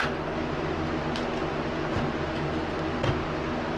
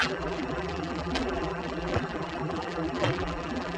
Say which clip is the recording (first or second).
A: first